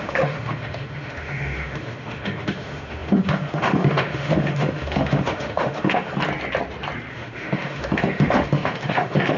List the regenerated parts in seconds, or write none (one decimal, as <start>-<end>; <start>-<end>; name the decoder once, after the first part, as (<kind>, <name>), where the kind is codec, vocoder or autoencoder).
0.0-6.1 (autoencoder, DAC-VAE); 7.1-9.4